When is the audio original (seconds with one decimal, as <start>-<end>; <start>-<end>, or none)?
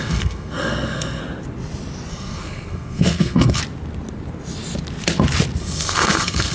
1.2-2.1; 3.6-5.6